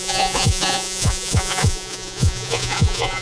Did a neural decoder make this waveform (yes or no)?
yes